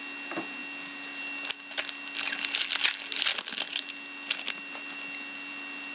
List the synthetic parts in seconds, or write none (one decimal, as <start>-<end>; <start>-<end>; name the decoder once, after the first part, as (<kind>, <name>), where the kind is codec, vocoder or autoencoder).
none